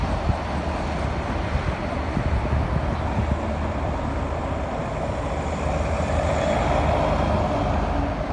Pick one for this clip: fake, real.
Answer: real